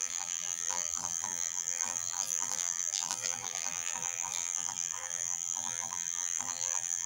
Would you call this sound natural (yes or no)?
no